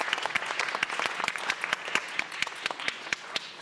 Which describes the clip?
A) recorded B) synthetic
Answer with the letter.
B